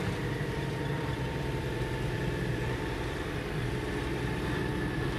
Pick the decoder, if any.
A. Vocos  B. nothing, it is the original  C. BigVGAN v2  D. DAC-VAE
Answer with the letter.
C